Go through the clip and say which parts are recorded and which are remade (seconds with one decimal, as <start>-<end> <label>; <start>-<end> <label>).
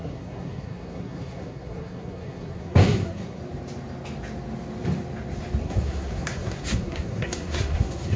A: 0.0-3.4 remade; 3.4-5.6 recorded; 5.6-8.2 remade